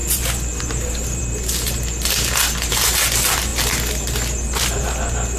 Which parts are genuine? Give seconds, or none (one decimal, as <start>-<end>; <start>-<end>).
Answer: 0.6-5.4